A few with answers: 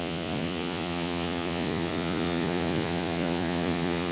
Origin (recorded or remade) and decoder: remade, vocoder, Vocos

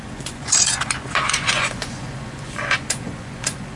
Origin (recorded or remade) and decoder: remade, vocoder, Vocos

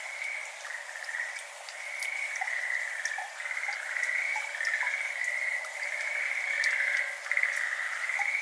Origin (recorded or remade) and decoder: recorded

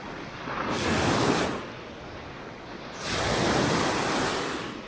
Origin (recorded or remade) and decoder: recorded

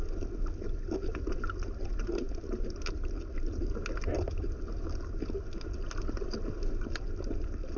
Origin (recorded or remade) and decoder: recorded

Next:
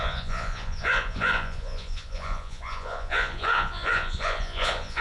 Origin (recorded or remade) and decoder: remade, vocoder, Vocos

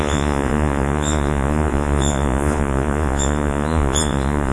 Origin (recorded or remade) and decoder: remade, vocoder, Vocos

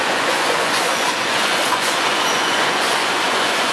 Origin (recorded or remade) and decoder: remade, vocoder, Vocos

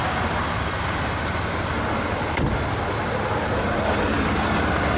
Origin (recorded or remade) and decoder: recorded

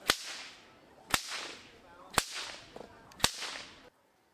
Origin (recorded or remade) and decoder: recorded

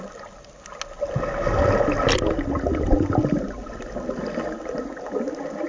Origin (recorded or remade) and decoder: recorded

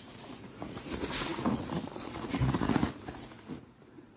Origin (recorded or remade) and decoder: remade, vocoder, Vocos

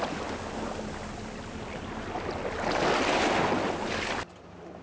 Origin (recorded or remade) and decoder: recorded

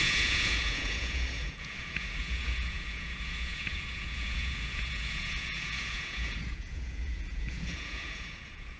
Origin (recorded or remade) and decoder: remade, vocoder, Vocos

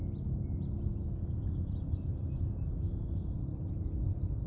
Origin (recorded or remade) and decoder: recorded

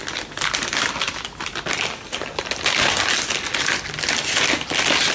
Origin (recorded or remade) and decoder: recorded